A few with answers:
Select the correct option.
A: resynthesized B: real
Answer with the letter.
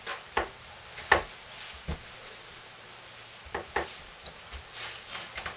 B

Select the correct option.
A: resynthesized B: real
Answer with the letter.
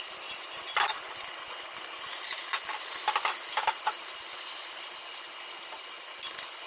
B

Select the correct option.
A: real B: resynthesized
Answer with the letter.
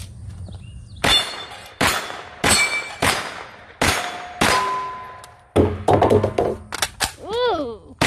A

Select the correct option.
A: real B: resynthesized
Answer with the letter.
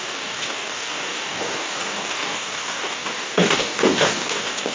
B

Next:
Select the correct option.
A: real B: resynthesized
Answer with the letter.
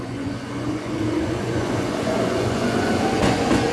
B